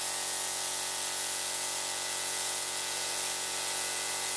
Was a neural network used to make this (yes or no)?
yes